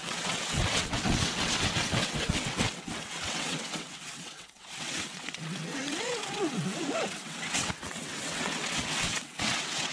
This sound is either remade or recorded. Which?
remade